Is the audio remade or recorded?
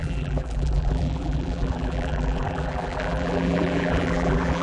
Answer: remade